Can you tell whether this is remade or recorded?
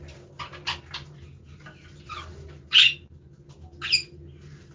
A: recorded